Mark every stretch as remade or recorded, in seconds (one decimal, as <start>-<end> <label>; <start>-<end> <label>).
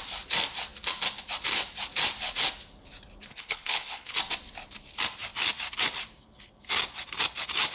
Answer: 0.0-3.3 recorded; 3.3-4.2 remade; 4.2-7.7 recorded